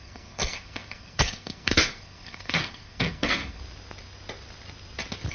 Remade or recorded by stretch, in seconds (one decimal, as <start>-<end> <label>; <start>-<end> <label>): 0.0-3.6 remade; 3.6-5.3 recorded